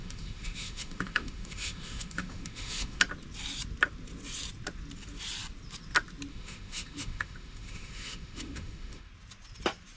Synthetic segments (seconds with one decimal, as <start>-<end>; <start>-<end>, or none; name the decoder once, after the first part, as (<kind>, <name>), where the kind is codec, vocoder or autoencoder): 0.0-3.0 (autoencoder, DAC-VAE); 6.3-9.1